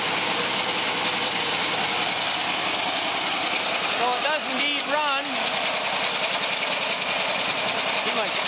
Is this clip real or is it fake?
real